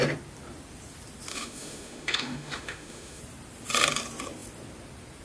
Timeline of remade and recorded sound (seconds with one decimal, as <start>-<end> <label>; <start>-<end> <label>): 0.0-1.3 recorded; 1.3-3.2 remade; 3.2-5.2 recorded